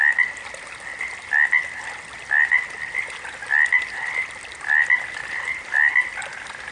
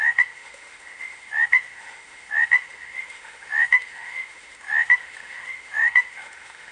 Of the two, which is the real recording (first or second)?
first